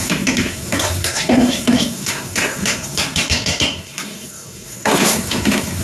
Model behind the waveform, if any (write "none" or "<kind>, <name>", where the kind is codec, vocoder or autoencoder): codec, SNAC